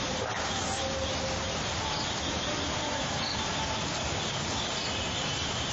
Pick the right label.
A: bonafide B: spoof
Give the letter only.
A